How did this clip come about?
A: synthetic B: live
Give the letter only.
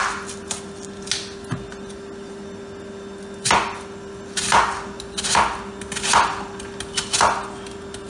B